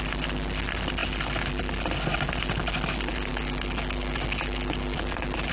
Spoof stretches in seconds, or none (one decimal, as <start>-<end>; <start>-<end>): 3.3-5.5